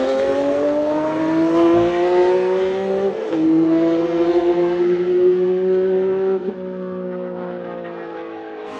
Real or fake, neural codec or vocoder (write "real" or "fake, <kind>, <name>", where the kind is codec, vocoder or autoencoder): fake, codec, SNAC